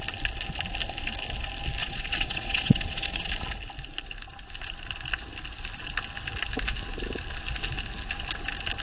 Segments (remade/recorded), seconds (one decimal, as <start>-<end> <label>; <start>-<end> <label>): 0.0-1.8 recorded; 1.8-3.3 remade; 3.3-8.8 recorded